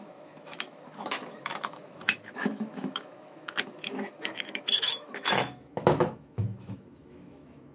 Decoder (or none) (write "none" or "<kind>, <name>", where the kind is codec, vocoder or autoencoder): autoencoder, DAC-VAE